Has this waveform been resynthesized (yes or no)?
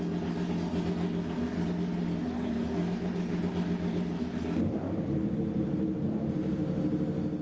no